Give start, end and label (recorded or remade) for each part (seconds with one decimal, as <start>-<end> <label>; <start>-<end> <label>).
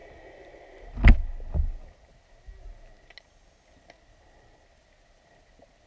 0.0-5.9 recorded